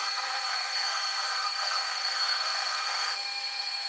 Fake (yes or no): yes